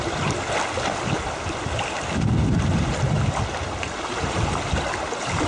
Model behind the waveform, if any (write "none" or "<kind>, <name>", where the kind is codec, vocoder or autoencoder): none